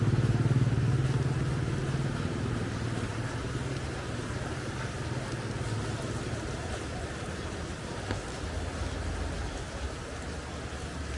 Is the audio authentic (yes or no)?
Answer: yes